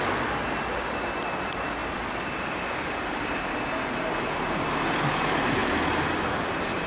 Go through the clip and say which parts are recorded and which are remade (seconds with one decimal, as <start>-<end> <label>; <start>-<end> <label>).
0.0-1.8 recorded; 1.8-3.6 remade; 3.6-5.6 recorded; 5.6-6.9 remade